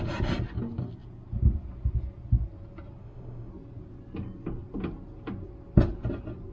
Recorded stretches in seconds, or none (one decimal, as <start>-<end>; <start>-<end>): 0.0-3.0; 3.5-6.5